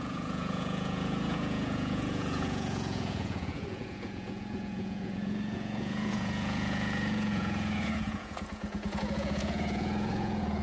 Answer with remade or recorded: remade